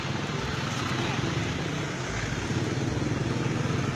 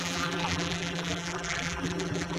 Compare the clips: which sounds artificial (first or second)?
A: second